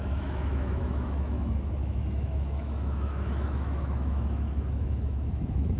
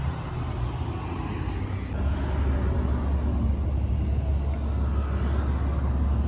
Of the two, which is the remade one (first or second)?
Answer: first